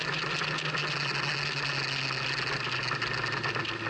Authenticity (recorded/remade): recorded